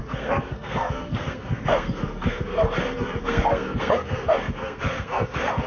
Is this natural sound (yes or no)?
no